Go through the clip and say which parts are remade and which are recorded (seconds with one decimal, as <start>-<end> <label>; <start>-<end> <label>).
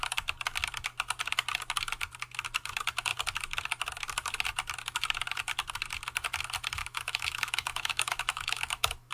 0.0-6.8 recorded; 6.8-9.1 remade